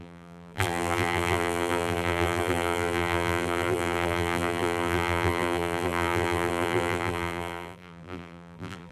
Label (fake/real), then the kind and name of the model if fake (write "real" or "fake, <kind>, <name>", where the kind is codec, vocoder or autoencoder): fake, vocoder, BigVGAN v2